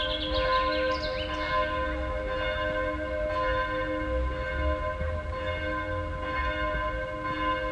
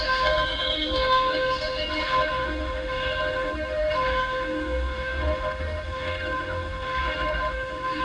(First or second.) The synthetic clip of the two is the second